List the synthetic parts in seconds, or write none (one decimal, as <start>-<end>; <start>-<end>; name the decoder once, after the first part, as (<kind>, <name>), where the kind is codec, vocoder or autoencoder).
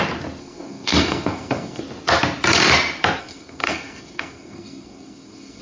0.4-1.8 (codec, SNAC); 3.2-5.6